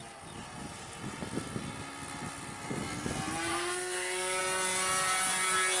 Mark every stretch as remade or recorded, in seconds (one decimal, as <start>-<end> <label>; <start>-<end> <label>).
0.0-3.5 recorded; 3.5-4.4 remade; 4.4-5.8 recorded